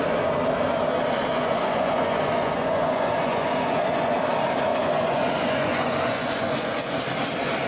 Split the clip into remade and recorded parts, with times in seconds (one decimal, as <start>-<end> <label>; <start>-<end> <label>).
0.0-1.3 recorded; 1.3-4.2 remade; 4.2-4.7 recorded; 4.7-7.0 remade; 7.0-7.7 recorded

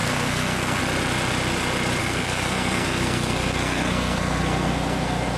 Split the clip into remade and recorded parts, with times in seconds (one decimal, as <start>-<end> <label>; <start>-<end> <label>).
0.0-0.8 remade; 0.8-2.0 recorded; 2.0-5.4 remade

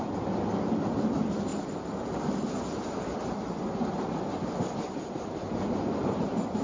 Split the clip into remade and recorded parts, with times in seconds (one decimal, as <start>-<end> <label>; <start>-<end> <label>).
0.0-6.6 recorded

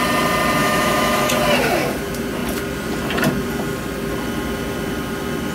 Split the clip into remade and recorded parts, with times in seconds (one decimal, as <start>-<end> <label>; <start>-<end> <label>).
0.0-0.6 recorded; 0.6-1.3 remade; 1.3-5.5 recorded

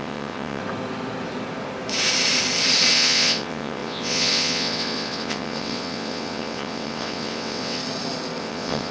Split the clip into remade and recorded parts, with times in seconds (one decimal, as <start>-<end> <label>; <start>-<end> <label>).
0.0-0.6 remade; 0.6-2.9 recorded; 2.9-7.8 remade; 7.8-8.4 recorded; 8.4-8.9 remade

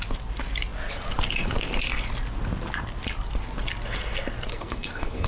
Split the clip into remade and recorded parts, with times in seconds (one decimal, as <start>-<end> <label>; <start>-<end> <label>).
0.0-4.5 recorded; 4.5-5.3 remade

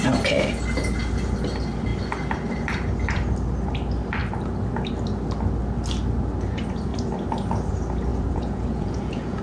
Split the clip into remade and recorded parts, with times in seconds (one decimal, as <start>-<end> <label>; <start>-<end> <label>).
0.0-8.1 recorded; 8.1-9.4 remade

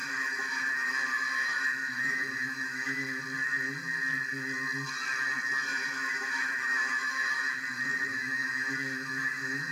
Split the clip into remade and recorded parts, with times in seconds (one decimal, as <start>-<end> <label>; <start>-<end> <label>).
0.0-3.2 remade; 3.2-5.7 recorded; 5.7-7.6 remade; 7.6-8.1 recorded; 8.1-9.7 remade